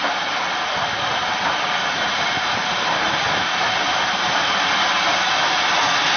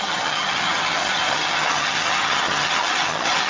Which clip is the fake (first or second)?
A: second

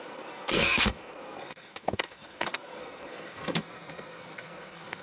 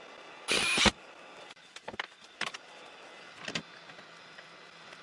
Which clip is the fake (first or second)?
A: first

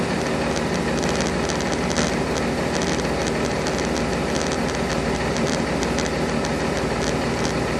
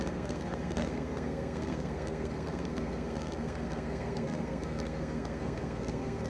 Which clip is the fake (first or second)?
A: second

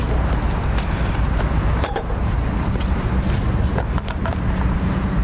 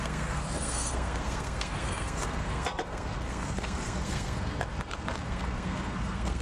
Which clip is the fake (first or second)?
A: second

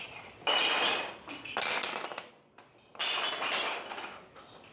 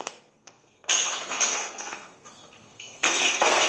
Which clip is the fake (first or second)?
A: second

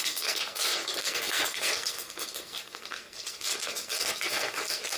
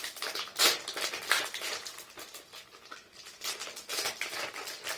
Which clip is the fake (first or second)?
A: first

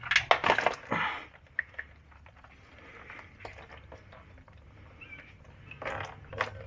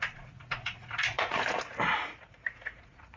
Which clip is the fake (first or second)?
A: second